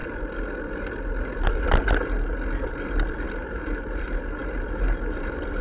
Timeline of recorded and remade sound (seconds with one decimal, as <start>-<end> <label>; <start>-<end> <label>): 0.0-3.4 recorded; 3.4-5.6 remade